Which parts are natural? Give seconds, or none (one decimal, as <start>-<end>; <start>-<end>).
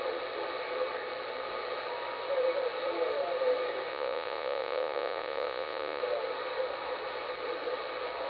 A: 0.0-3.9; 6.0-8.3